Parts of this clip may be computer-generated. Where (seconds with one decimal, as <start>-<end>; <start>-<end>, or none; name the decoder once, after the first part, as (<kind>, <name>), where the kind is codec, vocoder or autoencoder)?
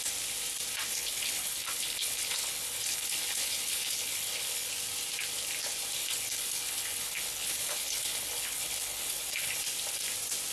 0.9-4.7 (codec, HILCodec); 6.0-9.6